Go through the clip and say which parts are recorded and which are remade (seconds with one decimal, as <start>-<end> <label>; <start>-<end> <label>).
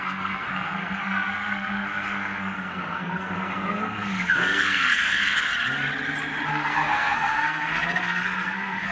0.0-5.5 remade; 5.5-6.5 recorded; 6.5-8.9 remade